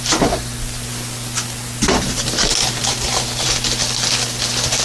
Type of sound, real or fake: real